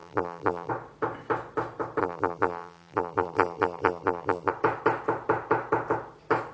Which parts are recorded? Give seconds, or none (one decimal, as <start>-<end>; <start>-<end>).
0.7-2.0; 4.5-6.5